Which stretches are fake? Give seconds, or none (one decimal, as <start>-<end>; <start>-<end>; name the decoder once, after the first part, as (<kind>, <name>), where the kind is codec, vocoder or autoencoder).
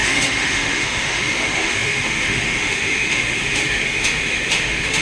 0.0-5.0 (autoencoder, DAC-VAE)